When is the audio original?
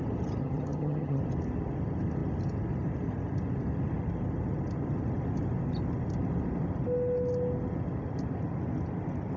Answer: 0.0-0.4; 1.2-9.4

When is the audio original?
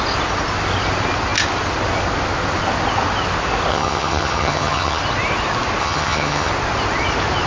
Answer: 0.0-3.7; 5.0-5.8; 6.5-7.5